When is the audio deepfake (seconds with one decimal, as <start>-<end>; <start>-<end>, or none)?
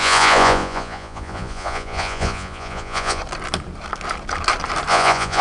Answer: 0.0-3.2; 4.9-5.4